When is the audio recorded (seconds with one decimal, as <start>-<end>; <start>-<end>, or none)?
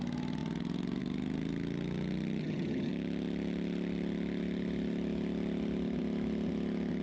0.0-2.4; 2.9-7.0